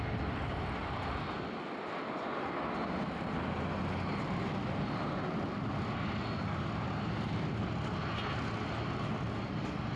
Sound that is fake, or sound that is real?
real